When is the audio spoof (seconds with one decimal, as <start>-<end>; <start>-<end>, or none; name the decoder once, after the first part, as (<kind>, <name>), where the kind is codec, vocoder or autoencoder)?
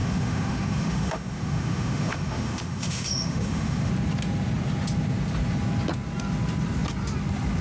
0.0-3.9 (autoencoder, DAC-VAE)